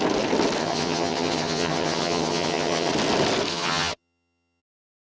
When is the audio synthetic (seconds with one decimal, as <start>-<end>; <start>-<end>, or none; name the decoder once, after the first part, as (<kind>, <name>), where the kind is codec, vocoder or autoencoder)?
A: 0.6-2.9 (vocoder, HiFi-GAN); 3.5-4.6

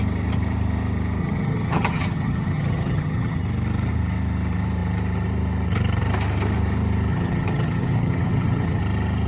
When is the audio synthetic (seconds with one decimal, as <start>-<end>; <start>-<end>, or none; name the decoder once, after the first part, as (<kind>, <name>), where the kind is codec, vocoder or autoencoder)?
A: 1.2-3.4 (vocoder, HiFi-GAN); 7.1-8.8

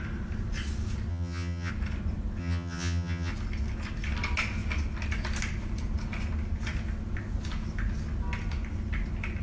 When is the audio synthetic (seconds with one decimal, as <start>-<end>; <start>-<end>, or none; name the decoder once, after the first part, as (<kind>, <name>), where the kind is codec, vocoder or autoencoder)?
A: 1.1-1.7 (vocoder, HiFi-GAN); 2.4-3.3

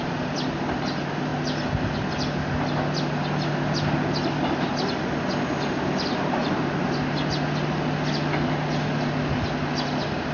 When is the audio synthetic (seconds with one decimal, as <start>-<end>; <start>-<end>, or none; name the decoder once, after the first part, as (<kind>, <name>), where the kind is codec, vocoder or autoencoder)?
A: none

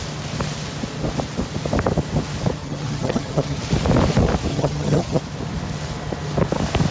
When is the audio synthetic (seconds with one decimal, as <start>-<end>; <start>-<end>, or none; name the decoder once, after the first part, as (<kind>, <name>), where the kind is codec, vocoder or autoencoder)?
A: 2.6-3.6 (vocoder, HiFi-GAN); 4.5-5.2

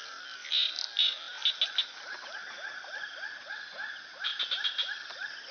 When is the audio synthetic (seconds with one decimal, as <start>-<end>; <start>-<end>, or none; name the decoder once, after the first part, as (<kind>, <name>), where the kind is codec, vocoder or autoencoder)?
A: none

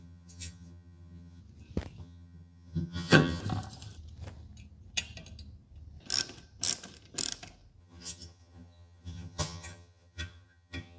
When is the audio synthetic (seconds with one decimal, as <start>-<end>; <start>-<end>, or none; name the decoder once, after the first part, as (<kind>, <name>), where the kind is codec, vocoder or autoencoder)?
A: 0.0-1.4 (vocoder, HiFi-GAN); 2.0-3.4; 7.8-11.0

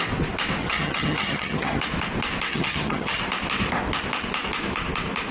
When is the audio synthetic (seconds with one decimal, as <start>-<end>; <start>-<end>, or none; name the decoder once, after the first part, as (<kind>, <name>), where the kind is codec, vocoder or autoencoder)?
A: 0.6-1.8 (vocoder, HiFi-GAN); 2.5-3.2